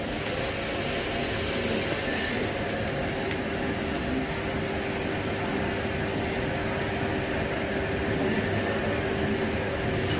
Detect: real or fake real